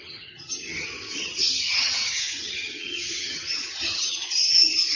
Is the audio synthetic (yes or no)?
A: yes